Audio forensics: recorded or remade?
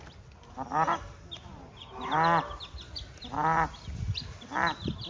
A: recorded